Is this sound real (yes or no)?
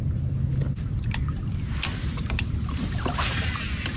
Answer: yes